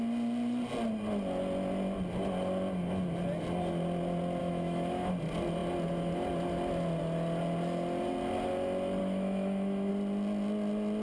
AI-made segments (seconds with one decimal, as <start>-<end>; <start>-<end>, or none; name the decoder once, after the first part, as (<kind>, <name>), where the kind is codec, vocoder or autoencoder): 4.4-5.1 (autoencoder, DAC-VAE); 9.0-9.9